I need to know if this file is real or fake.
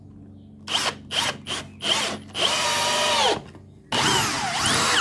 real